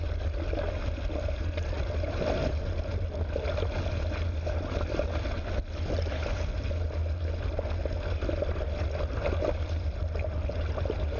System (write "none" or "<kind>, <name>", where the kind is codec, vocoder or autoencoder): none